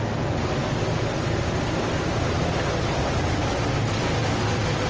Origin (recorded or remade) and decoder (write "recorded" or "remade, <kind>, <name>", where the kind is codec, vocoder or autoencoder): recorded